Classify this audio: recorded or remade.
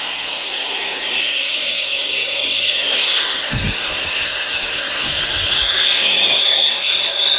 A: remade